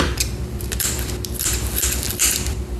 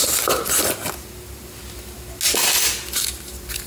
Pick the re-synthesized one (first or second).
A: first